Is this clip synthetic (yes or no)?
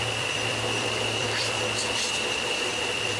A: yes